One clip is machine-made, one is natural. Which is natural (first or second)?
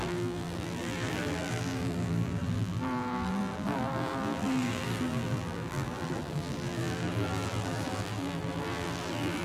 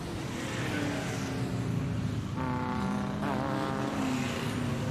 second